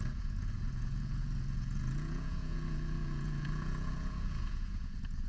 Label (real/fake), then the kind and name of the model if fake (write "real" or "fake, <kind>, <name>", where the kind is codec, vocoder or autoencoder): fake, vocoder, Vocos